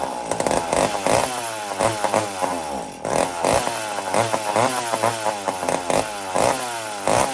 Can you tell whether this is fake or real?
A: real